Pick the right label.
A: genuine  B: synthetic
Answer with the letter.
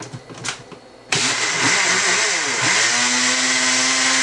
A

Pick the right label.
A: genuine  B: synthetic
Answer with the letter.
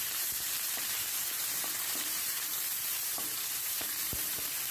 B